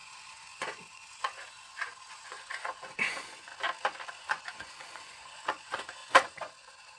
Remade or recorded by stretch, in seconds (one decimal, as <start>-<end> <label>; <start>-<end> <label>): 0.0-3.5 remade; 3.5-4.1 recorded; 4.1-7.0 remade